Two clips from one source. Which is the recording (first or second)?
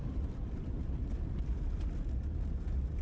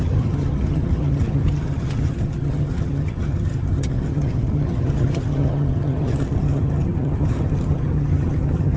first